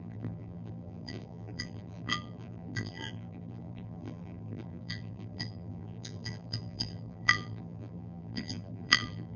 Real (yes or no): no